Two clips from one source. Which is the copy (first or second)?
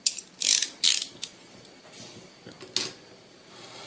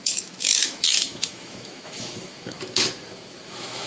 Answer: second